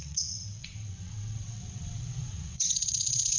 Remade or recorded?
remade